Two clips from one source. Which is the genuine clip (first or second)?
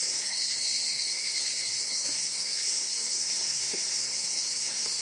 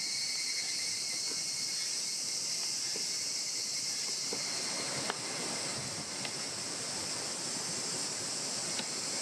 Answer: second